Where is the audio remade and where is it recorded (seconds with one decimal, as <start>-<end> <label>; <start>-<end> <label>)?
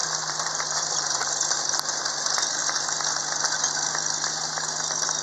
0.0-1.3 remade; 1.3-5.2 recorded